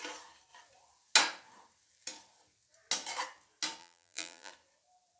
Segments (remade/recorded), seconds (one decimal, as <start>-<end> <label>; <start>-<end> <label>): 0.0-3.8 recorded; 3.8-4.5 remade; 4.5-5.2 recorded